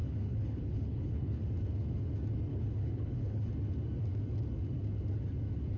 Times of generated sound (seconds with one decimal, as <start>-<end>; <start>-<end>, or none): 0.0-1.4; 2.5-3.5